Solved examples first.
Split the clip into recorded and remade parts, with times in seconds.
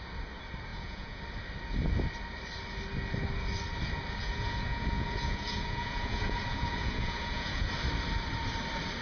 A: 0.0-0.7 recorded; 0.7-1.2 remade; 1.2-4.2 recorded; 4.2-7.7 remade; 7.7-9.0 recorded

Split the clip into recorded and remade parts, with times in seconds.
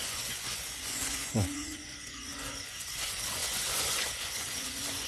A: 0.0-5.1 remade